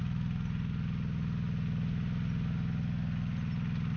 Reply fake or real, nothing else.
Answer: real